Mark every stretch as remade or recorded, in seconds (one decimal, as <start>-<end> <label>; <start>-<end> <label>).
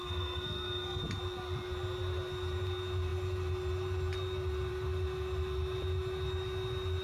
0.0-1.0 remade; 1.0-7.0 recorded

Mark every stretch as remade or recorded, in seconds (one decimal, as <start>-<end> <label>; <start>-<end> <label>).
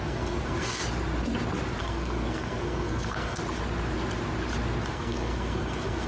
0.0-0.8 remade; 0.8-1.8 recorded; 1.8-3.4 remade; 3.4-4.9 recorded; 4.9-6.1 remade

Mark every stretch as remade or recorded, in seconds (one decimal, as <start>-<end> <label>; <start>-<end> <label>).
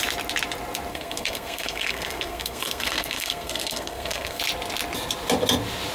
0.0-0.9 recorded; 0.9-4.4 remade; 4.4-5.9 recorded